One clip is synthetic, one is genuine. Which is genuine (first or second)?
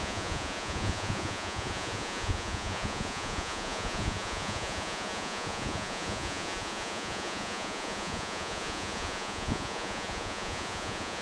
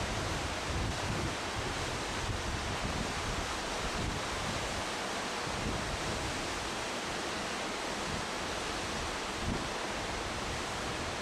second